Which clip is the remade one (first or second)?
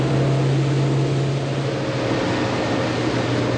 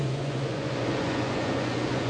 second